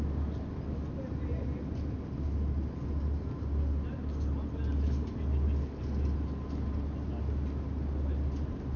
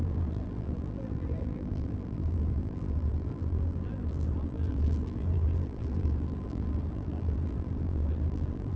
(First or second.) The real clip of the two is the first